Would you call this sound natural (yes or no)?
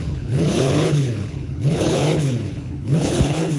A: no